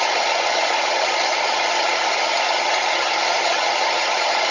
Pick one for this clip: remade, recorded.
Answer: remade